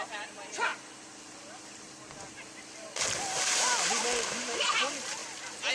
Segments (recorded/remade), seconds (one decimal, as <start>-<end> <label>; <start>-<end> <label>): 0.0-0.7 remade; 0.7-3.4 recorded; 3.4-5.2 remade; 5.2-5.7 recorded